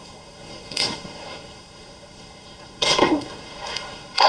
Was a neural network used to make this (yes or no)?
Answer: yes